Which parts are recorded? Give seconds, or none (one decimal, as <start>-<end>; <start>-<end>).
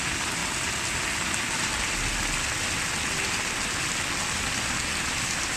0.0-5.6